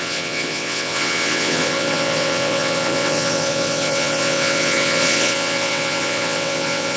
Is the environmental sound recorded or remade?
remade